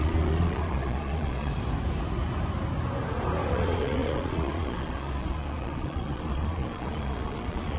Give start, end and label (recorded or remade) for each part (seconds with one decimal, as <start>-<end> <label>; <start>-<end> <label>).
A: 0.0-1.5 remade; 1.5-3.5 recorded; 3.5-7.8 remade